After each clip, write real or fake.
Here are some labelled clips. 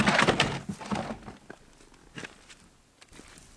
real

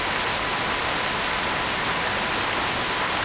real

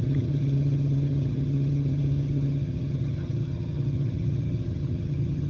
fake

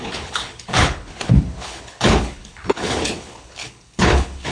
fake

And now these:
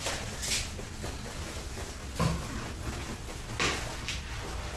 real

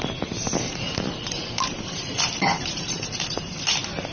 fake